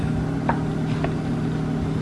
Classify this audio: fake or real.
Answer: real